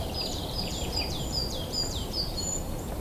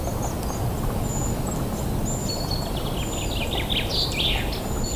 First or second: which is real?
second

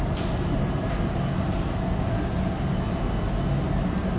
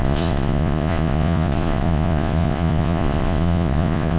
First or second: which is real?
first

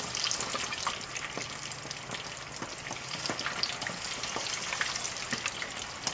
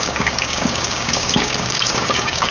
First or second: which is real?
first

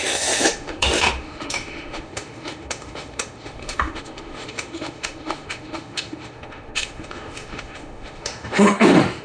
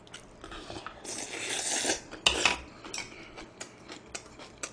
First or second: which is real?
second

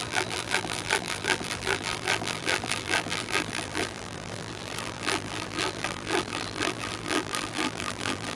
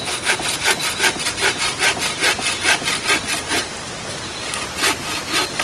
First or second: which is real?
second